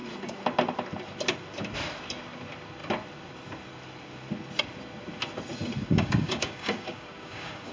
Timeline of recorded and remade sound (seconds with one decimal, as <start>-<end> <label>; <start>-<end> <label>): 0.0-5.8 recorded; 5.8-7.7 remade